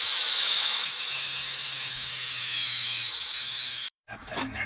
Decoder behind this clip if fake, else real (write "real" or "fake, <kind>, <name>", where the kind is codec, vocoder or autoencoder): fake, autoencoder, DAC-VAE